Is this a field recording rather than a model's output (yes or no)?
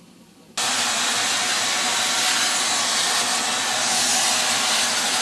yes